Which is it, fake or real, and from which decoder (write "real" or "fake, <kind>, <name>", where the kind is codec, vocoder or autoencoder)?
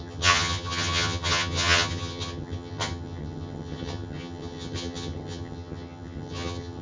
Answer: fake, vocoder, HiFi-GAN